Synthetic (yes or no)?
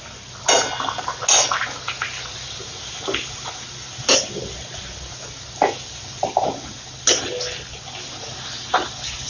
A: no